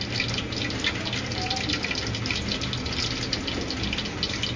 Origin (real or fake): real